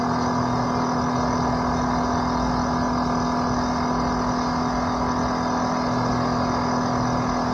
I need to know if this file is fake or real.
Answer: real